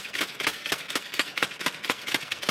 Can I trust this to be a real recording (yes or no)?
no